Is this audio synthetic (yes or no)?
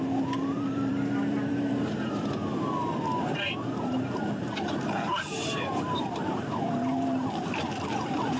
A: yes